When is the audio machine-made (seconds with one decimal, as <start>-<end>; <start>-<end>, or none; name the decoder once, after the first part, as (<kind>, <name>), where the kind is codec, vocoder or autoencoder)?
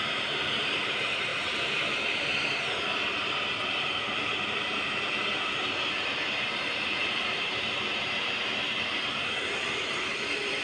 0.0-10.6 (vocoder, BigVGAN v2)